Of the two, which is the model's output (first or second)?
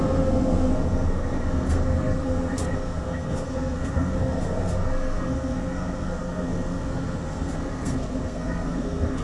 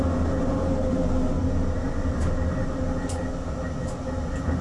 first